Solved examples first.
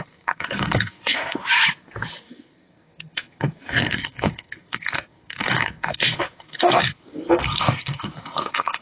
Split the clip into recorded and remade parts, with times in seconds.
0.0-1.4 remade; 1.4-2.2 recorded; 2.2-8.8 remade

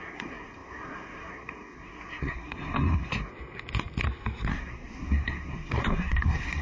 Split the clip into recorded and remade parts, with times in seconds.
0.0-3.3 remade; 3.3-4.5 recorded; 4.5-6.6 remade

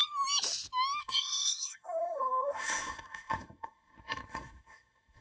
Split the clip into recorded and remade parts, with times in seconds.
0.0-1.0 recorded; 1.0-5.2 remade

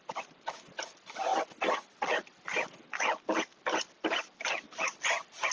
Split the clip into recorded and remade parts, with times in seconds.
0.0-5.5 recorded

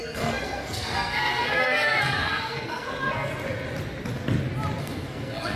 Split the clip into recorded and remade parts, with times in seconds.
0.0-3.3 remade; 3.3-4.8 recorded; 4.8-5.6 remade